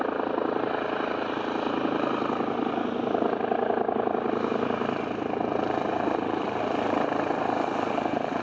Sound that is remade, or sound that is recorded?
recorded